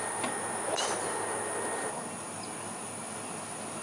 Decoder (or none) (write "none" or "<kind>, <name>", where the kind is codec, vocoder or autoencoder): none